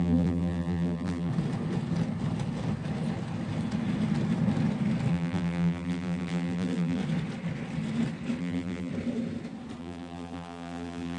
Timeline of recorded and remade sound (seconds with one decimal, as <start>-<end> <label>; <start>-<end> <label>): 0.0-1.3 remade; 1.3-5.1 recorded; 5.1-7.0 remade; 7.0-8.4 recorded; 8.4-8.9 remade; 8.9-9.8 recorded; 9.8-11.2 remade